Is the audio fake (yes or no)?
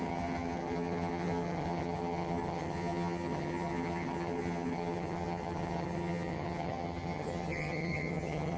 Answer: yes